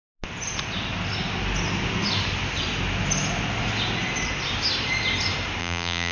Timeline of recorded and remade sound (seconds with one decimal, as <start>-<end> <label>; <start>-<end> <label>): 0.0-5.6 recorded; 5.6-6.1 remade